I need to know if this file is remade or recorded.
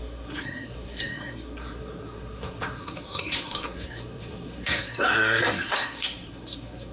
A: remade